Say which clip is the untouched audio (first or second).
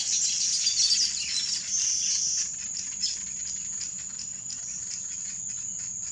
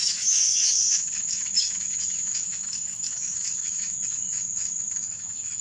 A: first